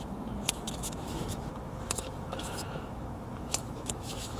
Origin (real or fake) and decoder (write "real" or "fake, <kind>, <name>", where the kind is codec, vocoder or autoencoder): fake, autoencoder, DAC-VAE